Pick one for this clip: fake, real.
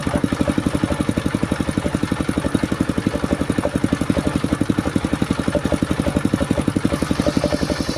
real